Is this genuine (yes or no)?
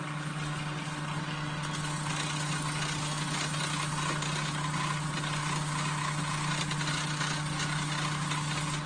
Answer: yes